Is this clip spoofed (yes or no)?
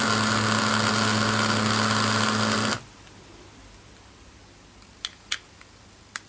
no